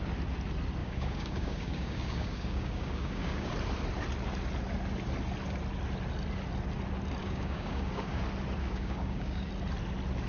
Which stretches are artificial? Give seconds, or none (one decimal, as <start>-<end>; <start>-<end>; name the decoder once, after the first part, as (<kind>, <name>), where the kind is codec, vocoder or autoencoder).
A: 0.8-3.5 (codec, DAC); 7.2-8.2; 8.6-9.5

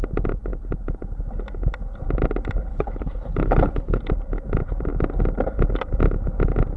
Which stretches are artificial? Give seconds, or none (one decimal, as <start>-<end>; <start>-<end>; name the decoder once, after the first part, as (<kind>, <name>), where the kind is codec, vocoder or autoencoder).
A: 2.7-4.0 (codec, HILCodec)